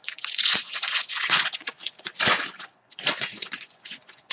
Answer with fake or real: fake